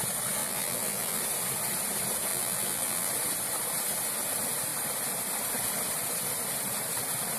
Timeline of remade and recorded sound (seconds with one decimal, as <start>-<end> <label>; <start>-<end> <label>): 0.0-0.4 recorded; 0.4-1.2 remade; 1.2-2.3 recorded; 2.3-3.1 remade; 3.1-7.4 recorded